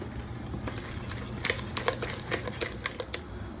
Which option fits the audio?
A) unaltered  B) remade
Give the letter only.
A